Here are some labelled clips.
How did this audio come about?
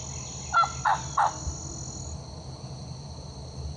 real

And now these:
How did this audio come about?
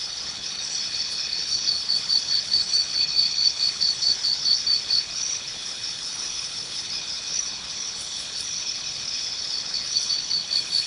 fake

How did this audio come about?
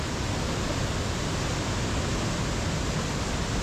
real